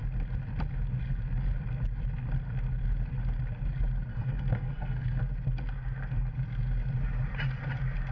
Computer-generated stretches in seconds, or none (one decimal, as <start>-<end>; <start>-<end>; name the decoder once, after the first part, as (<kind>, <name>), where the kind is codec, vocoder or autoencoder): 4.1-5.2 (codec, SNAC)